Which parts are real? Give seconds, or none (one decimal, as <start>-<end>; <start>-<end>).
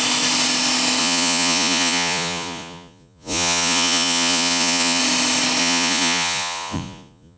0.0-1.0; 5.0-5.6